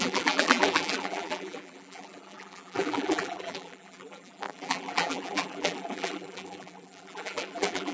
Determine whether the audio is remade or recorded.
remade